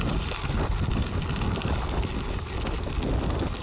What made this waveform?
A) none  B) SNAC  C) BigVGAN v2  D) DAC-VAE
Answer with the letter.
A